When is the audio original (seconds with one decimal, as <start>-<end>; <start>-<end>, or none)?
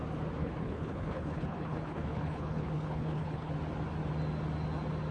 0.0-0.4; 3.5-5.1